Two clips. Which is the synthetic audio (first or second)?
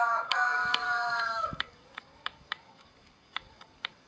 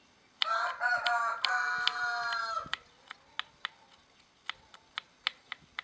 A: first